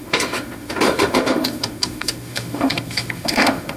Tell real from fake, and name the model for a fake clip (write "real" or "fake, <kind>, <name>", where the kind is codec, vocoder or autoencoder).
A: fake, autoencoder, DAC-VAE